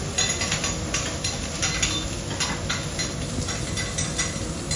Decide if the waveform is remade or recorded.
recorded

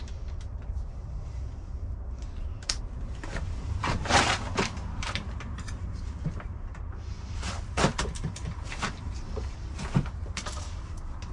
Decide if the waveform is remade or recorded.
remade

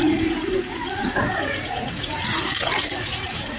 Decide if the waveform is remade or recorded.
remade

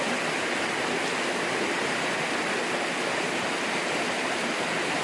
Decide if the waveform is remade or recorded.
recorded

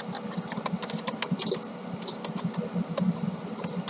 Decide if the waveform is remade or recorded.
recorded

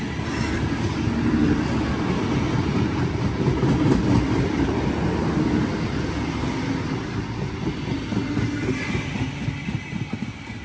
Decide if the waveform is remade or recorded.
recorded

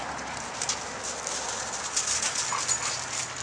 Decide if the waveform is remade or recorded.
recorded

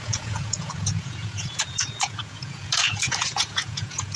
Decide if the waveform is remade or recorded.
remade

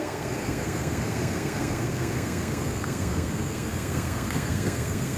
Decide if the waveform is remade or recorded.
remade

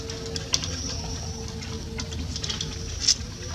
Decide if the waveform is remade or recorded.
recorded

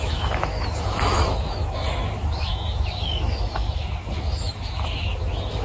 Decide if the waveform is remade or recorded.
remade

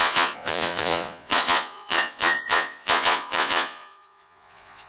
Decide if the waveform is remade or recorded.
remade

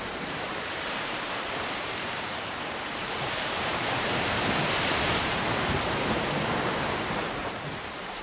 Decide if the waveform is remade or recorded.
remade